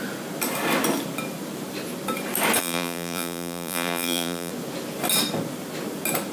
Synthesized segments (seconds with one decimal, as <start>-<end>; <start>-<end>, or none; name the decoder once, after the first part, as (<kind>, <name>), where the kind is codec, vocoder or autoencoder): 2.6-4.5 (vocoder, BigVGAN v2)